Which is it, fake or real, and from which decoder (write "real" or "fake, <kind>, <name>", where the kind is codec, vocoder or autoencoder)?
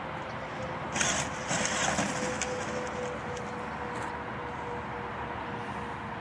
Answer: real